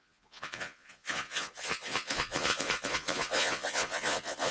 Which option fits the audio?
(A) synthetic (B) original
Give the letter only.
A